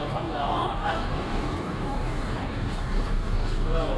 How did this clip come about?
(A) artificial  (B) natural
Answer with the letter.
A